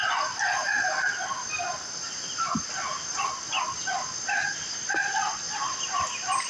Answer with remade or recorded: recorded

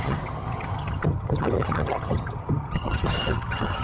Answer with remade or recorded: remade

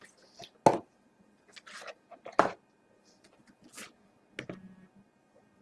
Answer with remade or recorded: recorded